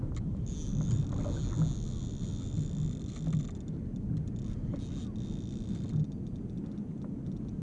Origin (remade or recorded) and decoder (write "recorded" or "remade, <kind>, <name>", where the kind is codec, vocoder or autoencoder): recorded